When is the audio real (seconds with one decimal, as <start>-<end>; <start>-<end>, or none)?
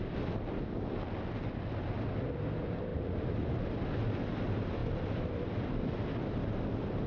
0.0-2.9; 3.6-4.8; 6.0-7.1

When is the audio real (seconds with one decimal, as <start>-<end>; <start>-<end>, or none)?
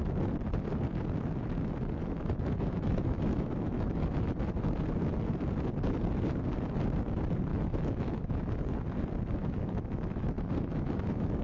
0.0-2.0; 4.3-7.5; 8.6-9.4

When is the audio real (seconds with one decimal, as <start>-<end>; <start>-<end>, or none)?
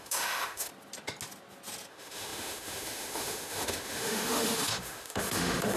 0.7-1.9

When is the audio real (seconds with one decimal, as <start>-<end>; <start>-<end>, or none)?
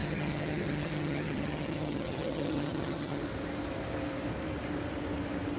3.2-5.6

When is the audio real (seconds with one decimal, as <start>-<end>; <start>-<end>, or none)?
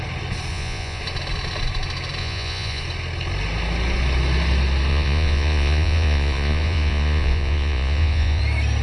0.0-0.5; 1.0-2.2; 2.8-4.9; 8.4-8.8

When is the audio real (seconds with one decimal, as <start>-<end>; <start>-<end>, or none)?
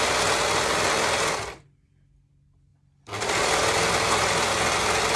0.0-5.2